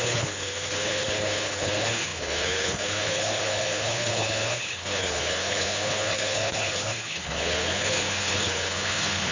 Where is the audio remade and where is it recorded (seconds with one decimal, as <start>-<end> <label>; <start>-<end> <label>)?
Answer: 0.0-9.3 remade